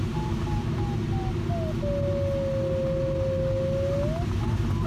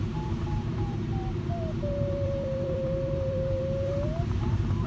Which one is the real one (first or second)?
first